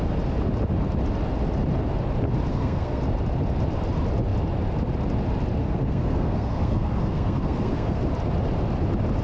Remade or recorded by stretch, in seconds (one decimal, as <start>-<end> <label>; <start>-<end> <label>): 0.0-2.5 recorded; 2.5-3.0 remade; 3.0-5.6 recorded; 5.6-8.0 remade; 8.0-9.2 recorded